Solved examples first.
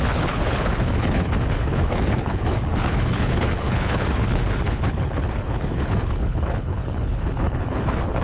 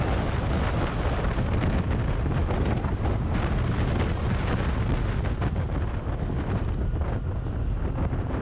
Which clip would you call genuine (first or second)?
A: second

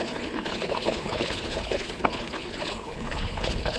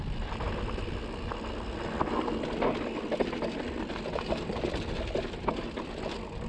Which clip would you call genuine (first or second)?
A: second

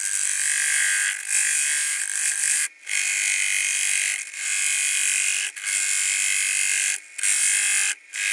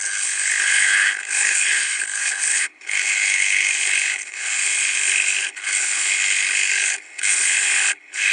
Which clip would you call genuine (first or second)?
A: first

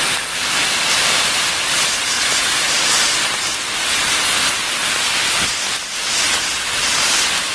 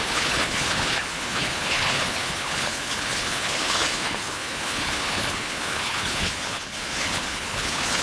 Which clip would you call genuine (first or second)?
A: first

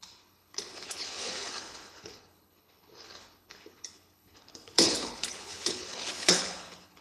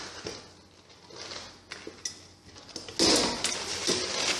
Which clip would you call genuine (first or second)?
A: second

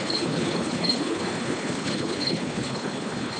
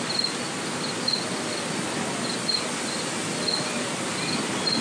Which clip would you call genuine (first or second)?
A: second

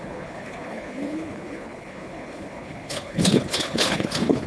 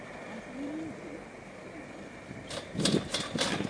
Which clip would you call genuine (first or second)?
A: second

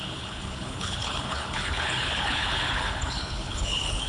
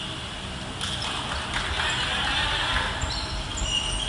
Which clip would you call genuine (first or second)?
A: second